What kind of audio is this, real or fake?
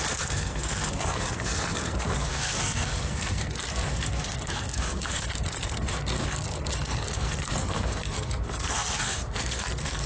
fake